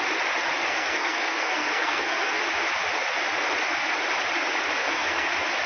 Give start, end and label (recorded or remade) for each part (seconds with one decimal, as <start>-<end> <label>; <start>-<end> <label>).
0.0-0.6 recorded; 0.6-2.4 remade; 2.4-4.8 recorded; 4.8-5.3 remade; 5.3-5.7 recorded